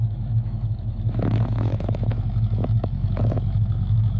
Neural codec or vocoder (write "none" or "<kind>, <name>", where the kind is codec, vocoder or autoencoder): autoencoder, DAC-VAE